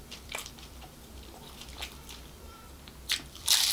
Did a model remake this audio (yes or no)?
yes